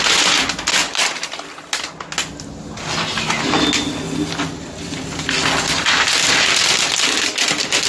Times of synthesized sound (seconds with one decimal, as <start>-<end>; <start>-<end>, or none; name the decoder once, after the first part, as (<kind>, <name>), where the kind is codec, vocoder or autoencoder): none